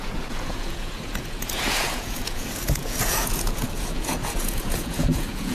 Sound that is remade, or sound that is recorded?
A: remade